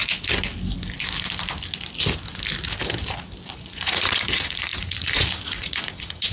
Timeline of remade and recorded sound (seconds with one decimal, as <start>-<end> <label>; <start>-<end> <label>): 0.0-3.5 recorded; 3.5-6.3 remade